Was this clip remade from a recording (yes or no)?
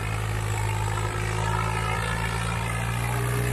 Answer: no